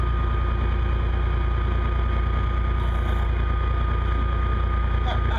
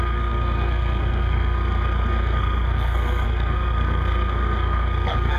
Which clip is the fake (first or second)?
second